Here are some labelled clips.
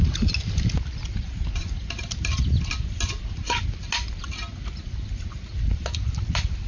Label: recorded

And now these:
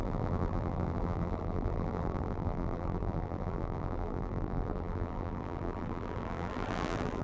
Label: remade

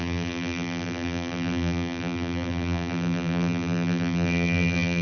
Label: remade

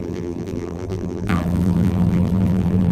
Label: remade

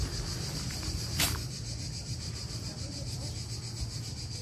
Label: recorded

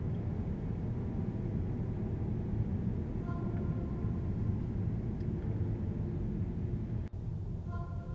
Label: recorded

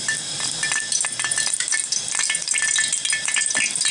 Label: recorded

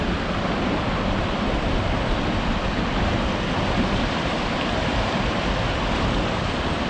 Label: remade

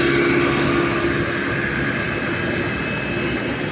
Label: recorded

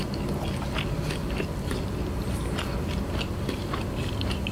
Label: recorded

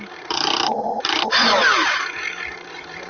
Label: remade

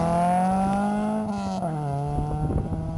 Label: recorded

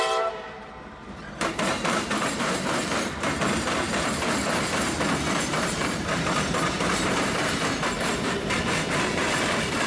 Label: remade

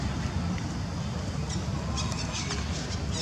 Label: recorded